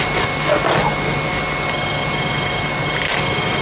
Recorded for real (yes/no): yes